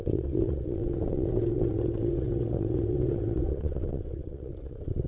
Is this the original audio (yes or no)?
no